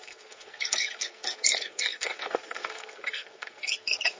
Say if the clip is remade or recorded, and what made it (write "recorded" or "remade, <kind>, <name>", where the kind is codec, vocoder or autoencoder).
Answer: remade, codec, SNAC